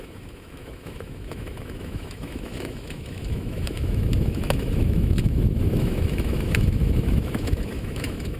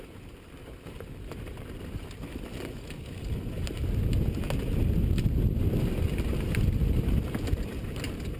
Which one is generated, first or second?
first